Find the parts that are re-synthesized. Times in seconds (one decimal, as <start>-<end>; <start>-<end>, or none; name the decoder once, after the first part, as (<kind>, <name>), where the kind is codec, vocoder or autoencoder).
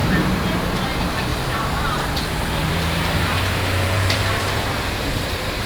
0.0-0.7 (vocoder, BigVGAN v2); 1.3-4.4